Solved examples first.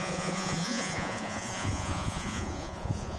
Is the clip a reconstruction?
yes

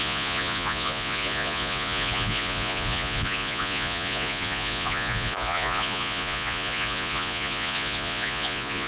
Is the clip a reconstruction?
yes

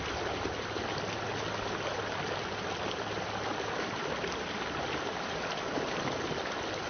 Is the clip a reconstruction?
no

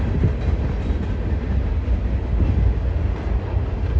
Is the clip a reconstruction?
no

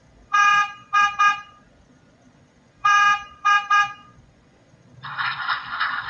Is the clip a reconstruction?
yes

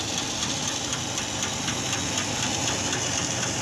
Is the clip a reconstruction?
no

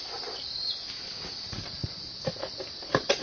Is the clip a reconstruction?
no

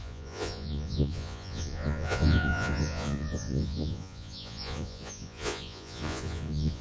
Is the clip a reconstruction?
yes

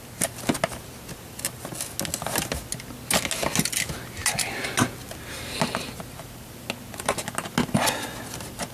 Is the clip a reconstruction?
no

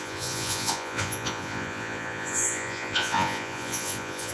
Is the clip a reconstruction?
yes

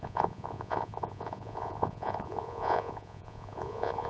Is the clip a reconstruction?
yes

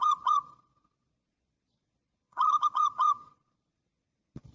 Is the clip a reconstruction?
yes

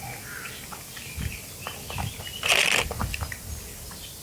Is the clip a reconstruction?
no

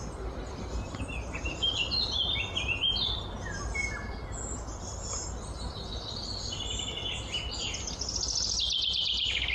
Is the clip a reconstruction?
no